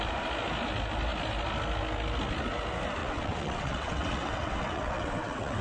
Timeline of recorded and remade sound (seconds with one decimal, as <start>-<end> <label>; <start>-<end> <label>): 0.0-3.0 recorded; 3.0-5.6 remade